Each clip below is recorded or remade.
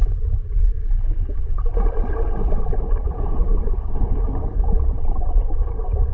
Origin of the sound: recorded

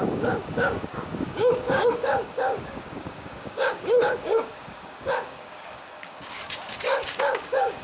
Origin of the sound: remade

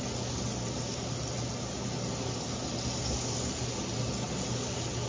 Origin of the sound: recorded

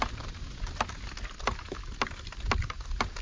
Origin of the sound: recorded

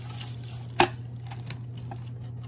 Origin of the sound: recorded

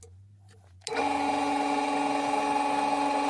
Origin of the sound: recorded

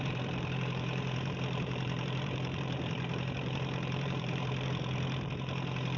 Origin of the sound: remade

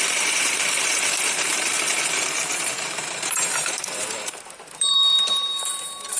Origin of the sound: remade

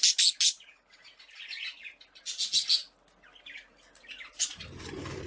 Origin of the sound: recorded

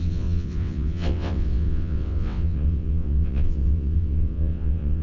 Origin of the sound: remade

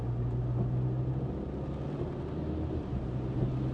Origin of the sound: recorded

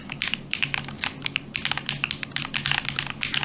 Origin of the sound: recorded